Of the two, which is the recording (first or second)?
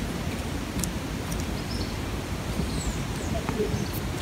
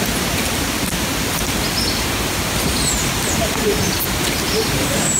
second